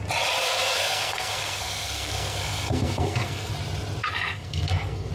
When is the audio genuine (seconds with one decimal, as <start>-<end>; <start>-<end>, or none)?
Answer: 0.0-0.4; 3.5-4.0